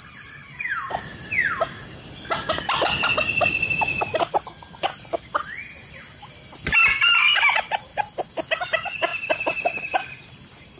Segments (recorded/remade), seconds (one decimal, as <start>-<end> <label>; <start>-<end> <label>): 0.0-10.8 recorded